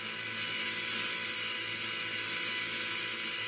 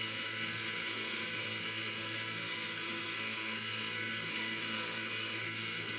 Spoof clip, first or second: second